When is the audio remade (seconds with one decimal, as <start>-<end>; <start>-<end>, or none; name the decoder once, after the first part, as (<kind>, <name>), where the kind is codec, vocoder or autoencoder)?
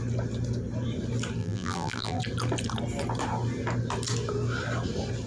1.4-2.2 (vocoder, BigVGAN v2)